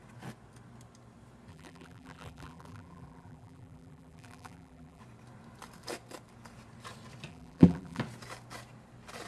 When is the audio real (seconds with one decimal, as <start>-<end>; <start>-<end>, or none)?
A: 0.0-1.5; 5.0-7.3; 8.0-9.3